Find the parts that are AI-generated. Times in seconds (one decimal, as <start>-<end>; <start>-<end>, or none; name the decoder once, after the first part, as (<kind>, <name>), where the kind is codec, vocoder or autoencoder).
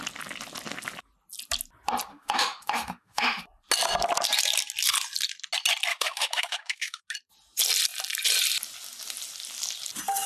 2.1-3.4 (autoencoder, DAC-VAE); 5.9-7.0